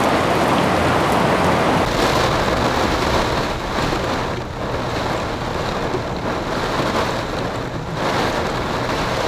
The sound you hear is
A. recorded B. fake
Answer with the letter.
A